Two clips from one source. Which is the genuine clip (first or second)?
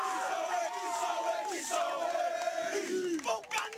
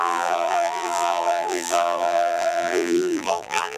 first